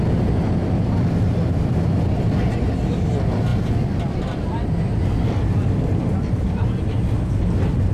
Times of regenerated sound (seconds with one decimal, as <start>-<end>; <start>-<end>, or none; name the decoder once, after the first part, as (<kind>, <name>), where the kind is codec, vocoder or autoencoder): none

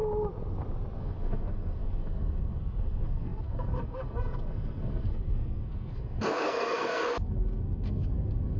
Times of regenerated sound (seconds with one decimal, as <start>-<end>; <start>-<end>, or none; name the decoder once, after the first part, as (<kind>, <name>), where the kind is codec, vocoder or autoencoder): 1.0-8.6 (codec, SNAC)

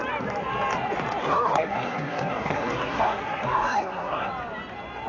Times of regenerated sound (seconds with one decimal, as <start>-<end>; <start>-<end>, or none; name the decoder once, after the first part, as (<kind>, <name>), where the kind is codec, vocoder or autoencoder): 1.2-4.3 (codec, SNAC)